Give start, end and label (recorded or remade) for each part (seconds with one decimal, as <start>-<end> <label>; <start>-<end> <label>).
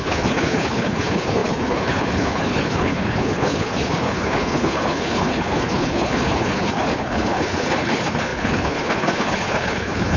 0.0-10.2 remade